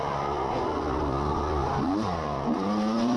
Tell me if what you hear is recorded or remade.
remade